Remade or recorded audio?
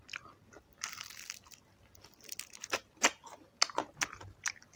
recorded